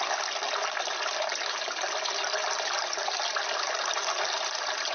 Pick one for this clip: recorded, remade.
recorded